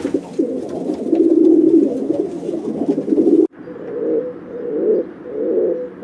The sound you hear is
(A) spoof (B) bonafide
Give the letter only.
B